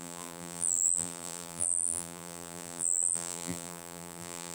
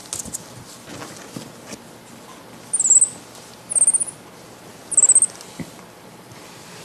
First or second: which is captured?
second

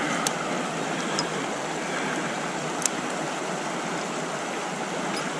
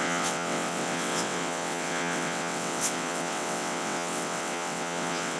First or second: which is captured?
first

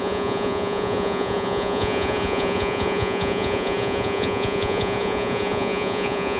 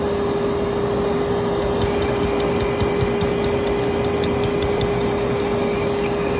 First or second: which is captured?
second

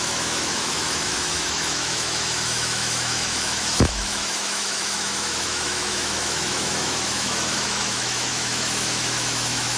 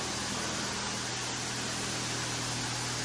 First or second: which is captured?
second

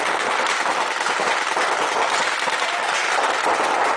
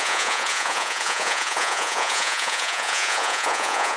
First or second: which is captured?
first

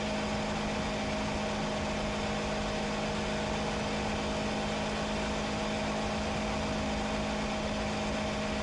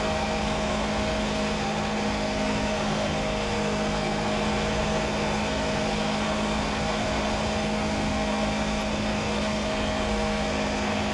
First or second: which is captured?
first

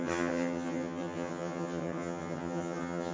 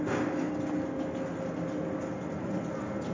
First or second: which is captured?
second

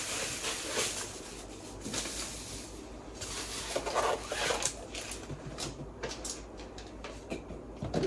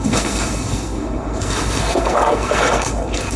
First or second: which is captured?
first